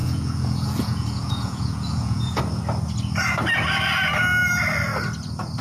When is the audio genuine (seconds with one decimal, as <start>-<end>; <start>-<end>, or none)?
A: 2.4-5.6